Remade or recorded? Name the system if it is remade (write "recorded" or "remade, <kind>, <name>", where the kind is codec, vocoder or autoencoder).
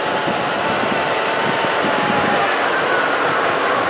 recorded